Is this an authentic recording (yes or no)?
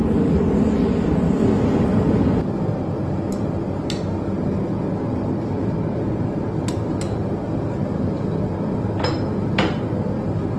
yes